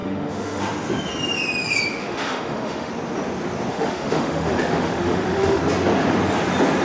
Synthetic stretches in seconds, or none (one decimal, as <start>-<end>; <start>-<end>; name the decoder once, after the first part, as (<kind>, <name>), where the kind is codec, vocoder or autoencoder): 0.0-0.6 (autoencoder, DAC-VAE); 1.9-2.9; 3.7-5.6